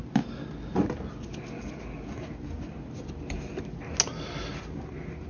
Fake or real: real